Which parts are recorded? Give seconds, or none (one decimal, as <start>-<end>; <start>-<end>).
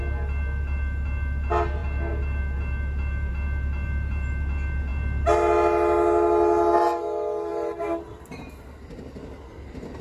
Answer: 0.0-10.0